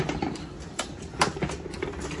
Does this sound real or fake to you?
real